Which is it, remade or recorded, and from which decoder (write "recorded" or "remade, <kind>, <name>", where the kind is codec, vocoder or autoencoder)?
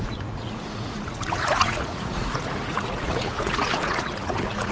remade, vocoder, Vocos